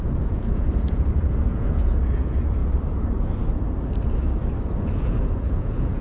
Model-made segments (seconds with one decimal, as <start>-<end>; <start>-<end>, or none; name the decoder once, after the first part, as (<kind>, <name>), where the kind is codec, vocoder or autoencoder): 0.0-2.6 (vocoder, Vocos); 4.8-6.0